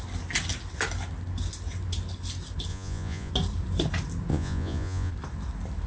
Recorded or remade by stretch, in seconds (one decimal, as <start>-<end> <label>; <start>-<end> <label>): 0.0-2.7 recorded; 2.7-3.3 remade; 3.3-4.3 recorded; 4.3-5.1 remade; 5.1-5.9 recorded